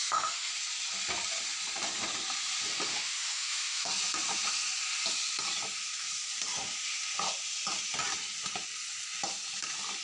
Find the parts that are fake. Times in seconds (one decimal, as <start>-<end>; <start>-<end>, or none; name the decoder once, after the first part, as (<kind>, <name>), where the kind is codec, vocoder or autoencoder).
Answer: 0.0-0.5 (autoencoder, DAC-VAE); 2.9-3.9